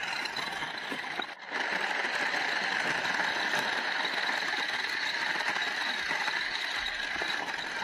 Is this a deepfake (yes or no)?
no